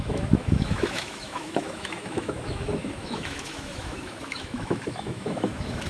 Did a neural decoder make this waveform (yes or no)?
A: yes